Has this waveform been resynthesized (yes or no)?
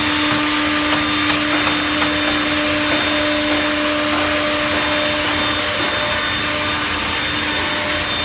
no